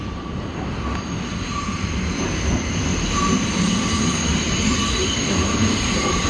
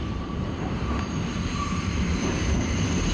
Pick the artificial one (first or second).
second